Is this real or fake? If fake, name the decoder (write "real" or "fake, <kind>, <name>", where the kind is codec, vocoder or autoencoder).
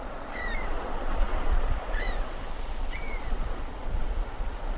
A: fake, vocoder, Vocos